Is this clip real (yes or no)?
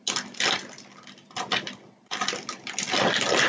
yes